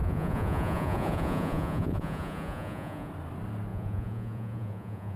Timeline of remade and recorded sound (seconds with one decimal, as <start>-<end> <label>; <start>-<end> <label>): 0.0-3.1 remade; 3.1-3.7 recorded; 3.7-5.2 remade